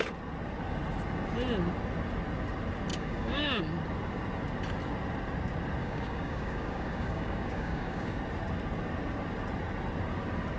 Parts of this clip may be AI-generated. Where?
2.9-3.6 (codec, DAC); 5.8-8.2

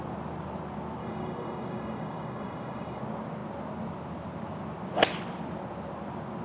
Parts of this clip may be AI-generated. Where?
1.0-3.0 (codec, DAC)

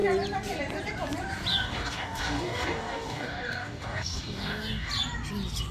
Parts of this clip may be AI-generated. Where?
1.5-4.9 (codec, DAC)

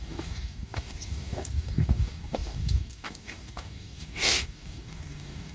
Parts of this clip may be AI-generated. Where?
0.0-5.5 (codec, DAC)

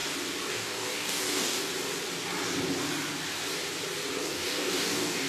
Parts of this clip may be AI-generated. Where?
0.5-1.7 (codec, DAC); 4.3-5.3

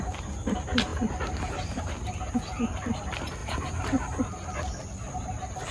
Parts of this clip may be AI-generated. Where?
none

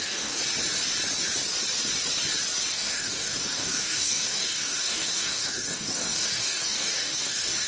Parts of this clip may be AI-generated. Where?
0.0-0.4 (codec, DAC); 2.7-7.7